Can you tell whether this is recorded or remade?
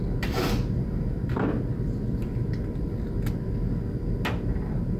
recorded